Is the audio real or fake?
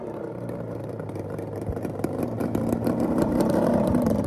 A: fake